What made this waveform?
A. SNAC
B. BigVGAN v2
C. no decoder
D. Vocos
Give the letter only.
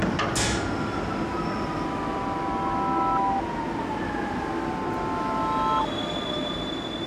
C